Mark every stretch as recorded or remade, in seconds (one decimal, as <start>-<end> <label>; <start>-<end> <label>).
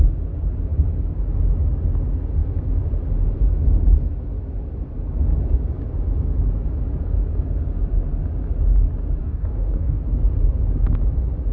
0.0-9.2 recorded; 9.2-10.0 remade; 10.0-11.5 recorded